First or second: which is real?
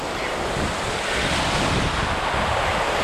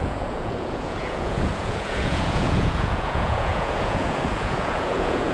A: first